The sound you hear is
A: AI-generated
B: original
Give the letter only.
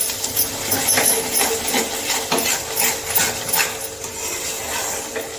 B